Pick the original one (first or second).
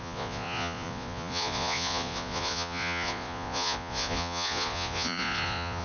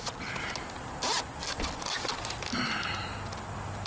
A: second